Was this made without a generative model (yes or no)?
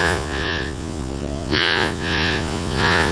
no